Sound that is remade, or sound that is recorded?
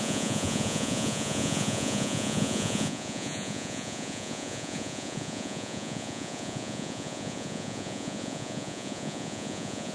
remade